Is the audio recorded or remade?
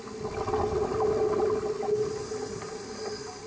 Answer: recorded